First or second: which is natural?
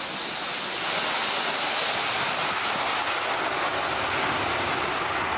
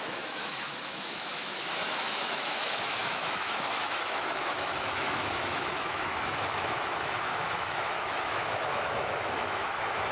first